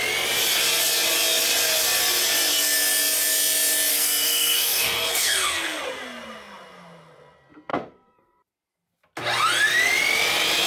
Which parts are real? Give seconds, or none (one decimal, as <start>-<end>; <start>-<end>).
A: 0.0-3.9; 5.8-7.7; 8.4-10.7